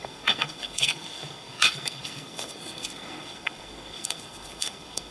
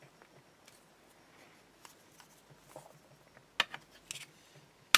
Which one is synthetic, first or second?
first